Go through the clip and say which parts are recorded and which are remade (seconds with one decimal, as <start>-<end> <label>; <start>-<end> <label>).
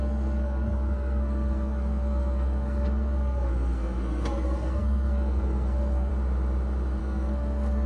0.0-6.1 remade; 6.1-7.0 recorded; 7.0-7.9 remade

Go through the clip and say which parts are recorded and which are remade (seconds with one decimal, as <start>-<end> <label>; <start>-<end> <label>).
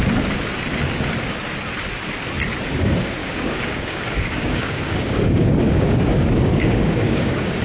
0.0-3.2 recorded; 3.2-7.6 remade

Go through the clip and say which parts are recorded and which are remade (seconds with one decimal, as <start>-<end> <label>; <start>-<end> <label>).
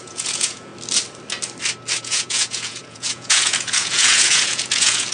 0.0-0.7 remade; 0.7-2.0 recorded; 2.0-5.1 remade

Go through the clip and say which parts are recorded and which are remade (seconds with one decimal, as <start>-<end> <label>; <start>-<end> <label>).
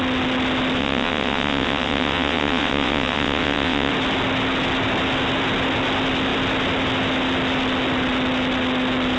0.0-0.8 recorded; 0.8-3.9 remade; 3.9-9.2 recorded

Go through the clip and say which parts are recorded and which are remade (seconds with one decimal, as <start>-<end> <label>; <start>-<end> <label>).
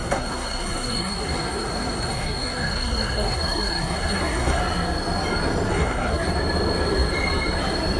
0.0-4.6 remade; 4.6-5.7 recorded; 5.7-6.3 remade; 6.3-8.0 recorded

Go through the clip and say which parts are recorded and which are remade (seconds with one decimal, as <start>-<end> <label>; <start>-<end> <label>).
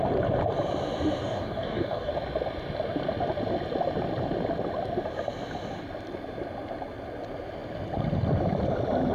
0.0-1.2 recorded; 1.2-2.1 remade; 2.1-9.1 recorded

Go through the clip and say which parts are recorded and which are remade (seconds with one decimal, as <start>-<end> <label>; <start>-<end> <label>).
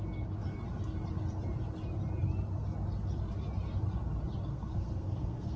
0.0-4.5 recorded; 4.5-5.6 remade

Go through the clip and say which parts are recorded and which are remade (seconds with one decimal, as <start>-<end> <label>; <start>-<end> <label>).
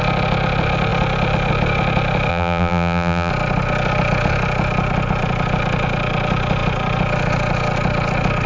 0.0-2.3 recorded; 2.3-3.3 remade; 3.3-8.5 recorded